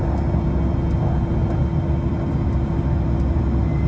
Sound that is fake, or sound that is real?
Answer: real